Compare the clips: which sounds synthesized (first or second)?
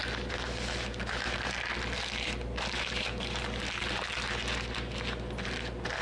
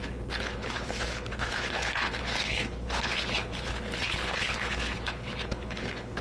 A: second